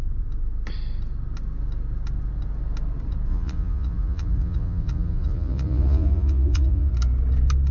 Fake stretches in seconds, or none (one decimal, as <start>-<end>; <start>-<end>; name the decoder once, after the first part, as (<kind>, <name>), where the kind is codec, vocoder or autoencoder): 3.3-6.9 (vocoder, Vocos)